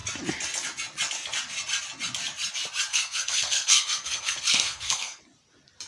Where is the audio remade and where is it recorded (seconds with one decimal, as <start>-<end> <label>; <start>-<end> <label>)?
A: 0.0-2.9 recorded; 2.9-5.2 remade; 5.2-5.9 recorded